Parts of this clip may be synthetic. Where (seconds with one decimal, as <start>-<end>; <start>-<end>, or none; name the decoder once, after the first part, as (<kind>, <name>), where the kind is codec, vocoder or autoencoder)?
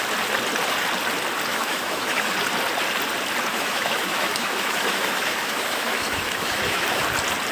1.5-2.3 (autoencoder, DAC-VAE); 3.5-7.0